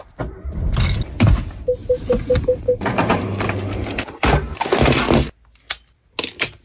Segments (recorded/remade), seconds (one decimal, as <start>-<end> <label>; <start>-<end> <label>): 0.0-1.8 recorded; 1.8-4.8 remade; 4.8-6.6 recorded